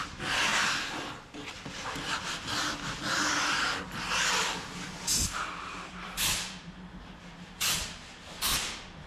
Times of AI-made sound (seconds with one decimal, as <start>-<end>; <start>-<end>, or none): 0.5-3.8; 5.1-6.2